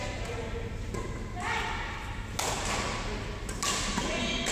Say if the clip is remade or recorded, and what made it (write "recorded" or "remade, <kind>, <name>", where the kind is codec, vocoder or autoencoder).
recorded